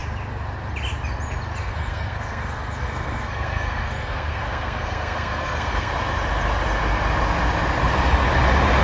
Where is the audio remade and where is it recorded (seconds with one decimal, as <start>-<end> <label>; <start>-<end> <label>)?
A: 0.0-1.6 recorded; 1.6-5.9 remade; 5.9-8.8 recorded